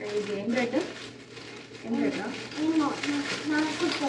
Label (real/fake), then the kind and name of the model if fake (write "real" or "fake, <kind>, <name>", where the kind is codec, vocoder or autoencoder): real